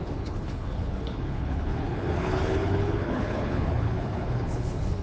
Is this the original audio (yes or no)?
no